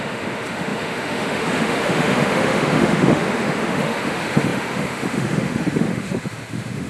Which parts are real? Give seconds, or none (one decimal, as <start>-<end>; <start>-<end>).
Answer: none

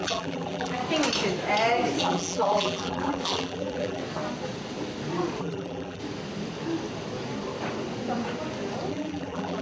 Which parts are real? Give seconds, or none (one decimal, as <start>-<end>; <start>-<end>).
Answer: 0.8-2.0; 4.0-5.4; 6.0-8.9